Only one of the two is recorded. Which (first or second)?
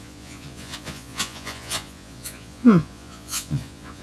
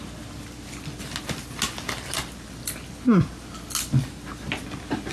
second